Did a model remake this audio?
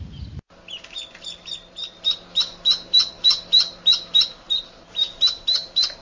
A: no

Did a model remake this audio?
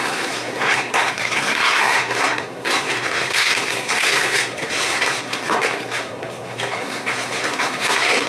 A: yes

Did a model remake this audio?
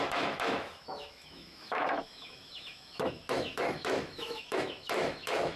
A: yes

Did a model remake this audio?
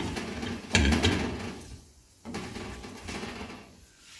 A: yes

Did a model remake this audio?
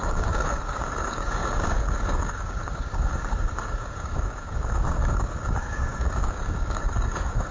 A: yes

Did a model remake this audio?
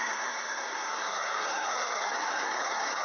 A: yes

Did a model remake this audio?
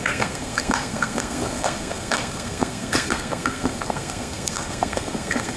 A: yes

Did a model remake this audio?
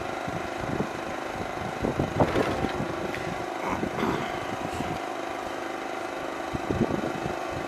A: no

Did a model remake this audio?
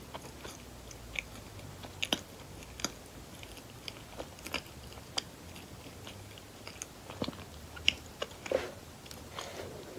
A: no